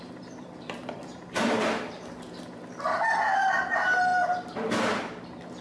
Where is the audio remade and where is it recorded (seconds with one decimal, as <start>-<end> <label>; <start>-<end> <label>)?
0.0-4.1 remade; 4.1-5.6 recorded